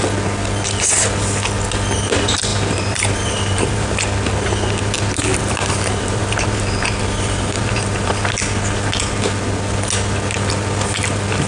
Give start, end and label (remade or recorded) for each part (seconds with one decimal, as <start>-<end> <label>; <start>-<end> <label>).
0.0-2.5 recorded; 2.5-4.0 remade; 4.0-5.3 recorded; 5.3-8.1 remade; 8.1-11.5 recorded